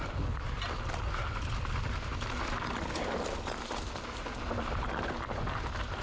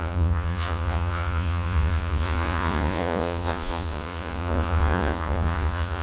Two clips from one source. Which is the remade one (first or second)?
second